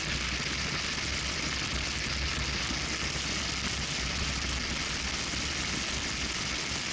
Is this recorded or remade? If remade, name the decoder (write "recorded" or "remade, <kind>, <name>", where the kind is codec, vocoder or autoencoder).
recorded